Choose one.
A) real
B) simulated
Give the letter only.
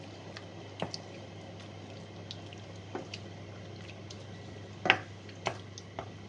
A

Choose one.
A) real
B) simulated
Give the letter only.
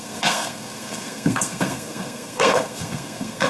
B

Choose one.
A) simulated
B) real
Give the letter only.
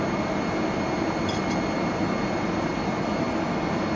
B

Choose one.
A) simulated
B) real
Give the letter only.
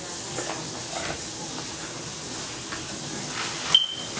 B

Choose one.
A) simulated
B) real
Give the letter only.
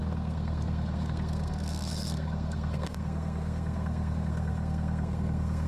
A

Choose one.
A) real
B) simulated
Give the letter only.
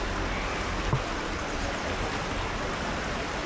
A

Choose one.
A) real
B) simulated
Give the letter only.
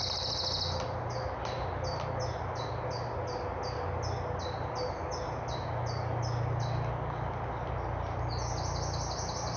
A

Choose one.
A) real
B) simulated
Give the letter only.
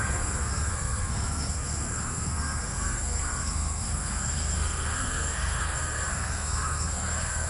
B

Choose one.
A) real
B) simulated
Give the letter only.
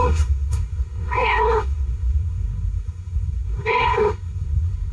B